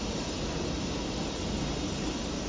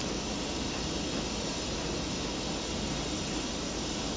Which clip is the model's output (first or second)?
first